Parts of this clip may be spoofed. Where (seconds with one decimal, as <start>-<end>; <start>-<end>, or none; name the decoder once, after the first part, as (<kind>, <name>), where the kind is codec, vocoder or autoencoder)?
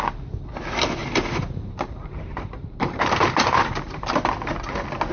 1.0-4.1 (vocoder, BigVGAN v2)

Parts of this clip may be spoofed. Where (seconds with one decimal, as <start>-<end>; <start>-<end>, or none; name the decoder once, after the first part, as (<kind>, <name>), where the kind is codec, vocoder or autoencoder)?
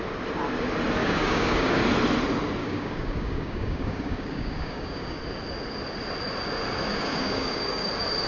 1.0-1.8 (codec, DAC); 2.6-5.2; 6.9-7.9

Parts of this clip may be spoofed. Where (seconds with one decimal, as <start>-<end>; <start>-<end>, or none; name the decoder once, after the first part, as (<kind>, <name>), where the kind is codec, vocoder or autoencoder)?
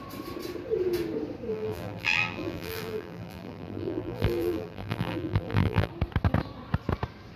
1.5-5.9 (vocoder, BigVGAN v2)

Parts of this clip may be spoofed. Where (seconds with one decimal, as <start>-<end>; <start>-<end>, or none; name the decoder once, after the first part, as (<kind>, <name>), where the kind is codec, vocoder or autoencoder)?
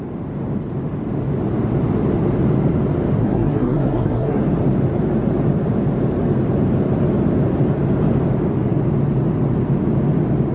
3.2-4.4 (codec, SNAC)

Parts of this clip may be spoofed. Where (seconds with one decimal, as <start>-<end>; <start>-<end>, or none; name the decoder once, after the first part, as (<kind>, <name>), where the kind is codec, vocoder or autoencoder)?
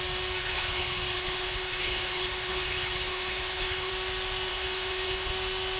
0.4-3.9 (codec, HILCodec); 4.5-5.3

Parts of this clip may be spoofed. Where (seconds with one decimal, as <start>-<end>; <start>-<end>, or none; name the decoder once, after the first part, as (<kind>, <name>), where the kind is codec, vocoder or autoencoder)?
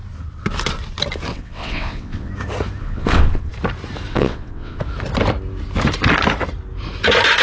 1.3-2.3 (vocoder, WaveNeXt); 2.8-3.5; 4.1-4.8